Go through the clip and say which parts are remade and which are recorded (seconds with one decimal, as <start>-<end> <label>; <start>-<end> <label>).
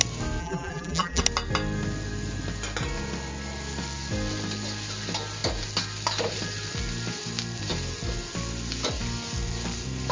0.0-0.4 recorded; 0.4-1.2 remade; 1.2-10.1 recorded